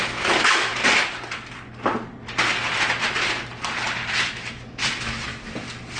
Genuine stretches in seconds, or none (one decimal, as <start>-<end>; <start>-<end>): 0.7-4.3; 4.8-6.0